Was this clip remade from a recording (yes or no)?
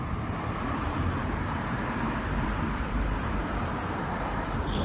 yes